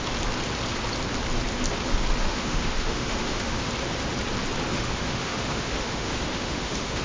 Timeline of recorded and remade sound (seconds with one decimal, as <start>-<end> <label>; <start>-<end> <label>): 0.0-2.2 recorded; 2.2-3.7 remade; 3.7-4.7 recorded; 4.7-7.0 remade